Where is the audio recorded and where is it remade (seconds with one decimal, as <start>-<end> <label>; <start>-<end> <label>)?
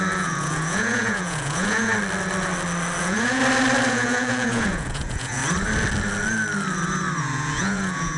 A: 0.0-1.9 remade; 1.9-3.0 recorded; 3.0-3.4 remade; 3.4-3.9 recorded; 3.9-5.4 remade; 5.4-7.2 recorded; 7.2-8.2 remade